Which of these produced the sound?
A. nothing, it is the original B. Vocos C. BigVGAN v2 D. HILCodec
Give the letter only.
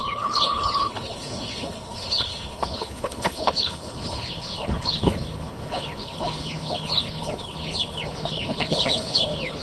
D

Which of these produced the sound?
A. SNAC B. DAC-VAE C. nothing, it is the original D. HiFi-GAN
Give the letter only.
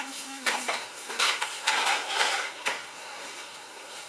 A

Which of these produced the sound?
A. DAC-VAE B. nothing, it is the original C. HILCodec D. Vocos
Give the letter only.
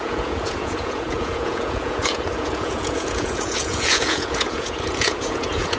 D